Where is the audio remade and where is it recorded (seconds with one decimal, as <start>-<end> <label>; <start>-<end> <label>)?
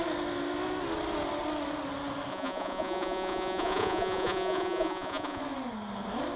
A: 0.0-2.3 recorded; 2.3-5.4 remade; 5.4-6.4 recorded